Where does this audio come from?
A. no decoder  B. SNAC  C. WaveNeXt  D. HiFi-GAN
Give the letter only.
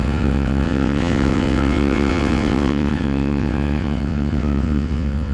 C